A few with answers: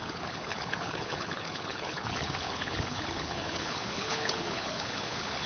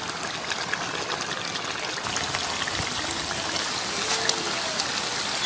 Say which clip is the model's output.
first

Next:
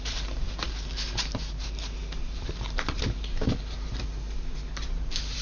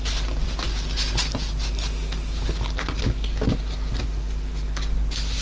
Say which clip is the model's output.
first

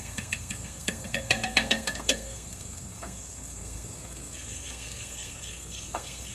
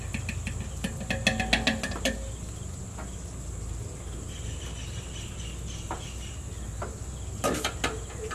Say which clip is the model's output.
first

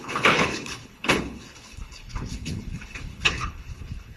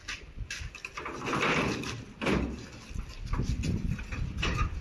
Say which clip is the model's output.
first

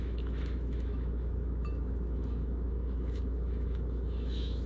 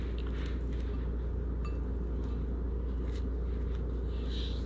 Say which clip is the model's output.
first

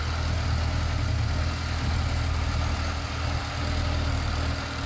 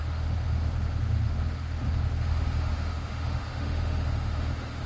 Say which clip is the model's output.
second